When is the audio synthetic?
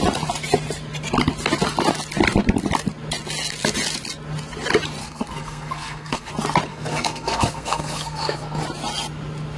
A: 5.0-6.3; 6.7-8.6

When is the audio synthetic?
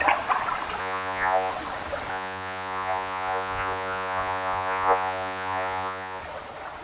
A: 0.8-1.5; 2.1-6.2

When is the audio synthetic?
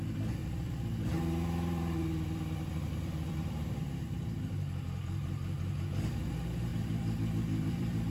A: 0.4-3.8; 6.7-8.1